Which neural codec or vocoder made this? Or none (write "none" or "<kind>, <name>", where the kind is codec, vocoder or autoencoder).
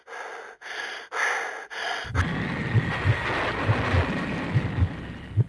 none